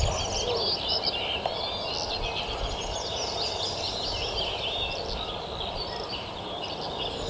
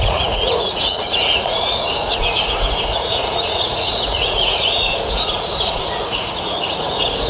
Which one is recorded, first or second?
first